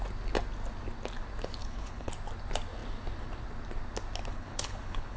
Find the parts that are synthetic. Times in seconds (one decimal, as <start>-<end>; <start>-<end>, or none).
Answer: 1.6-2.1; 4.3-5.2